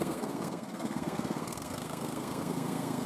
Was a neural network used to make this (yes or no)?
yes